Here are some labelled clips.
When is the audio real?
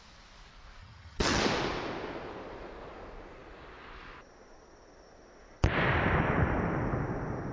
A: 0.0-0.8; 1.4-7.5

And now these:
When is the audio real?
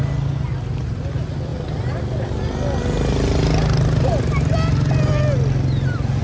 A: 0.0-6.2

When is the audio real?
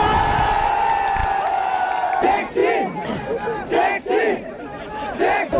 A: 0.0-5.6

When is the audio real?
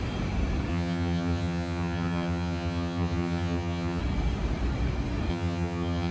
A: 0.0-0.7; 4.0-5.3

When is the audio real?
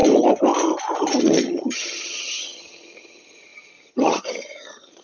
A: 0.0-1.1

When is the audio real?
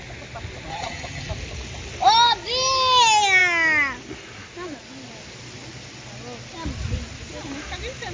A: 0.0-0.7; 1.3-8.1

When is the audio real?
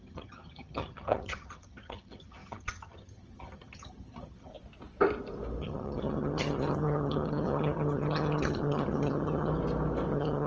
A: 4.5-5.6; 9.5-10.1